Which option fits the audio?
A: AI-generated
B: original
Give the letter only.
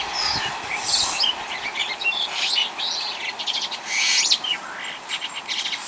B